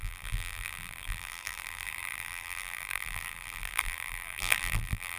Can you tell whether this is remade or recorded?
remade